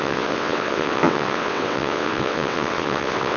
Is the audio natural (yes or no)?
no